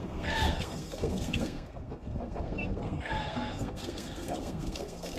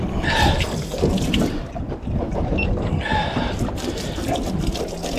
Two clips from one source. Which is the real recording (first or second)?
second